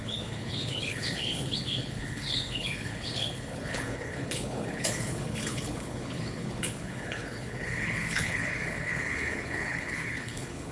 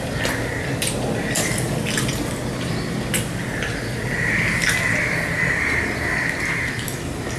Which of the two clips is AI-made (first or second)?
first